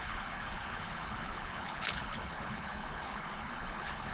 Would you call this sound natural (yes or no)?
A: no